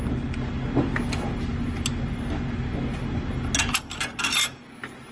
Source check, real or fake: real